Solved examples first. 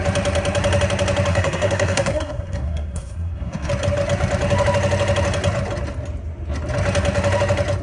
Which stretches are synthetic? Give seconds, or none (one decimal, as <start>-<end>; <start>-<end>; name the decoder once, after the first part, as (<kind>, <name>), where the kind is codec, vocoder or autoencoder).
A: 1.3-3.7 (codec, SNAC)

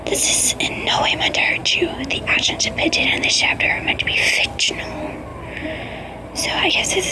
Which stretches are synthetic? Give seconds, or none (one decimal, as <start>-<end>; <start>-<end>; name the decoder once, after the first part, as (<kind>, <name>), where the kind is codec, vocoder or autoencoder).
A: none

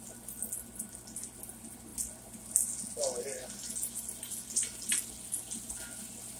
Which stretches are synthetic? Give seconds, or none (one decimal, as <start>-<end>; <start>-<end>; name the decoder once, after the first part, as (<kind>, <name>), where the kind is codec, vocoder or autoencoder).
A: none

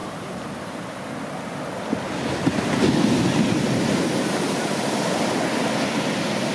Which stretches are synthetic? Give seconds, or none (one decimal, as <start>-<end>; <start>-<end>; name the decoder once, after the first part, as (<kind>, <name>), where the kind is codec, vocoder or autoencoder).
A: none

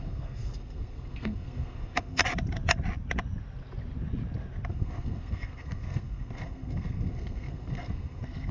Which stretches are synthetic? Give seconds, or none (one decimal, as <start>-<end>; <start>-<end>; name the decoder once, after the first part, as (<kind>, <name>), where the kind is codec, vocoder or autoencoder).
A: 0.0-2.2 (codec, SNAC); 4.7-8.5

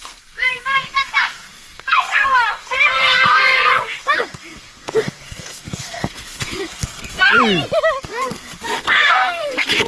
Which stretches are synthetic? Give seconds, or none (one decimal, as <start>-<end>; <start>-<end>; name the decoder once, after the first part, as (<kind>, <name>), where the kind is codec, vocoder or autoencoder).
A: 0.0-7.3 (codec, SNAC); 8.0-9.9